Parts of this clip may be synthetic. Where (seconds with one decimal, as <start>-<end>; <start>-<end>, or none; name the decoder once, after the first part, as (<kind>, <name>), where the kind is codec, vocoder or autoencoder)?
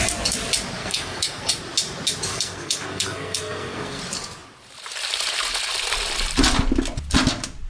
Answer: 0.8-1.5 (codec, SNAC); 2.3-4.0